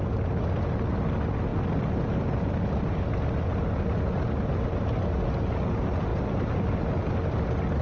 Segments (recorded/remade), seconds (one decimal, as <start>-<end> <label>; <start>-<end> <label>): 0.0-6.1 recorded; 6.1-6.8 remade; 6.8-7.8 recorded